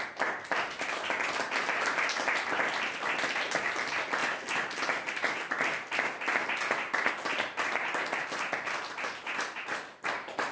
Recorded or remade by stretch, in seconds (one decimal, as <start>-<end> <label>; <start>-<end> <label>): 0.0-10.5 recorded